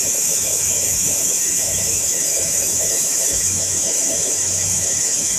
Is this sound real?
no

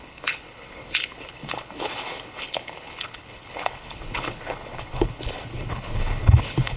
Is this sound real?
no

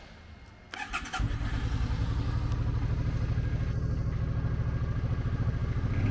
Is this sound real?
yes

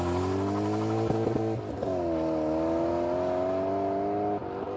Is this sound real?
yes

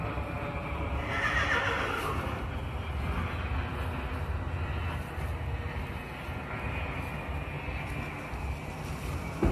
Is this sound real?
yes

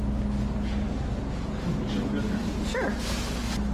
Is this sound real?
yes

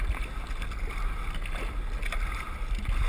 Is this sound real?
yes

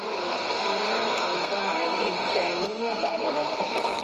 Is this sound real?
no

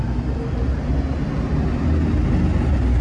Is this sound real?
yes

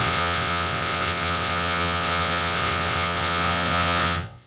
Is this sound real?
no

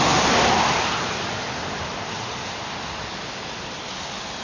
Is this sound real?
yes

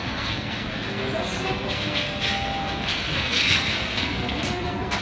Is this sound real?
no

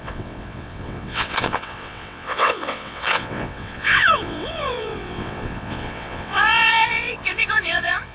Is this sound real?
no